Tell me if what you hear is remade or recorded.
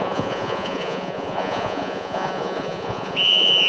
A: remade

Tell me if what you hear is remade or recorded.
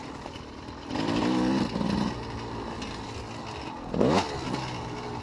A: recorded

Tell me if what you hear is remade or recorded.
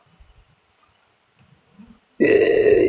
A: recorded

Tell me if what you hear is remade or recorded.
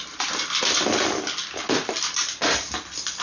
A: recorded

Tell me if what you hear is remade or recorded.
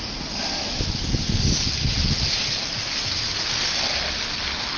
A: recorded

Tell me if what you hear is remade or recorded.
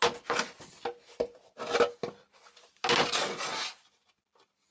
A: recorded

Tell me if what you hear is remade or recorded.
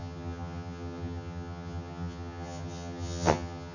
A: remade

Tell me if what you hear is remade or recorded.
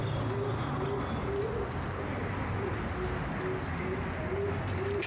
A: recorded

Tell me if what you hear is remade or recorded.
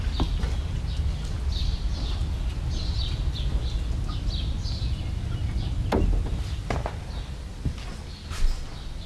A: recorded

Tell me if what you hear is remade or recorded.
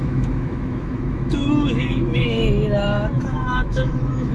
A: remade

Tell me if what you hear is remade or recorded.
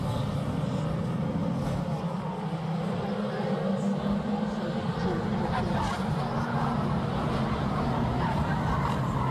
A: recorded